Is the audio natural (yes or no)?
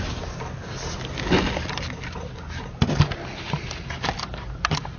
no